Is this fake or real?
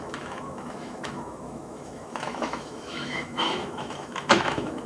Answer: fake